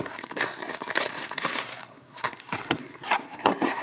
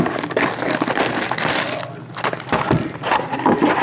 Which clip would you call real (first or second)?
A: second